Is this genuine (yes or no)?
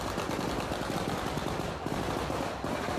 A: yes